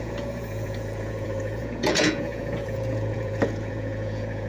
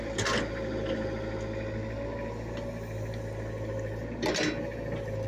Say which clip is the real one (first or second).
second